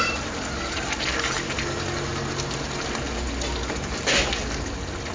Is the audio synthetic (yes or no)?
no